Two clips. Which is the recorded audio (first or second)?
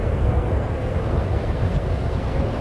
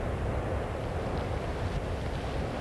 second